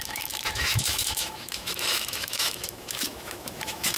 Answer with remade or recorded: remade